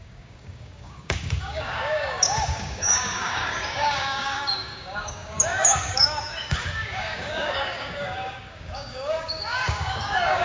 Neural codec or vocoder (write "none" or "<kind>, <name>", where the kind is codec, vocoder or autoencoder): codec, DAC